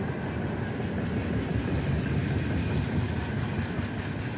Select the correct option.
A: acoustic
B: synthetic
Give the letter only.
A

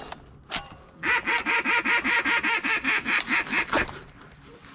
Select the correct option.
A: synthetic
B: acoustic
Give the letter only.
A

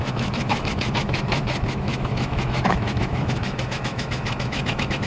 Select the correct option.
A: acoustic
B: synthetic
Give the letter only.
B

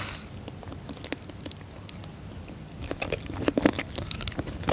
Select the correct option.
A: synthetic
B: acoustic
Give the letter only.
B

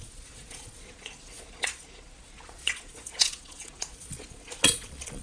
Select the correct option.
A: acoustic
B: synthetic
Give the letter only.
B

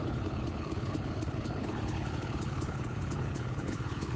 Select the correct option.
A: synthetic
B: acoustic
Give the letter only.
A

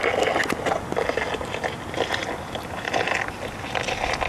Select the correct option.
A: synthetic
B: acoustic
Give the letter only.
B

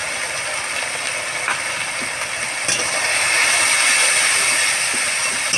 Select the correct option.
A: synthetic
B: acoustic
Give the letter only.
B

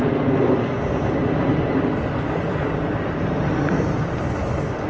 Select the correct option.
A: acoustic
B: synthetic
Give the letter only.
A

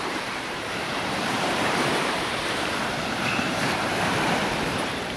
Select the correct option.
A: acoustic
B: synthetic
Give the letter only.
B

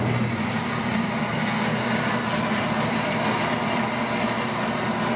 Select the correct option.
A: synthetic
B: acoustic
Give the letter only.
B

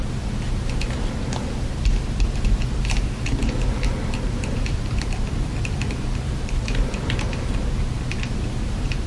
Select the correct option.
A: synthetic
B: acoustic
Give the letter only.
A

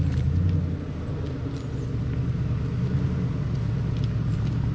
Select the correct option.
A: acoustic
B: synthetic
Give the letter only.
A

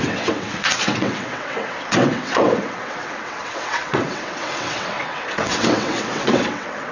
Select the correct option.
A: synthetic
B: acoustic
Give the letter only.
A